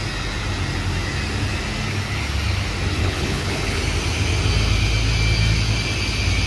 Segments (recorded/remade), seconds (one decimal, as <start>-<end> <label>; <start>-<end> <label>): 0.0-3.0 recorded; 3.0-3.8 remade; 3.8-6.5 recorded